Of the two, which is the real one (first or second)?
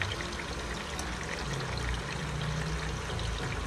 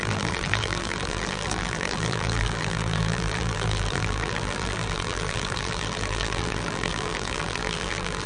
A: first